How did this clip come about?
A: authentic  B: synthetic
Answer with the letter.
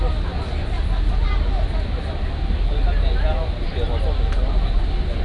A